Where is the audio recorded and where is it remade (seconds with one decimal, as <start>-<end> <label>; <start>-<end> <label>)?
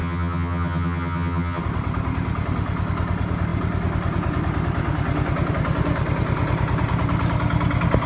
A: 0.0-1.6 remade; 1.6-8.1 recorded